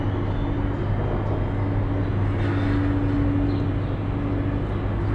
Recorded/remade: recorded